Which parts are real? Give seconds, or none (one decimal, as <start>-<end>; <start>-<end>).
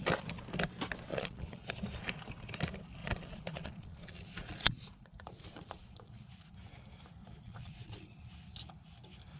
0.0-1.1; 1.7-3.0; 6.3-7.2; 8.2-9.4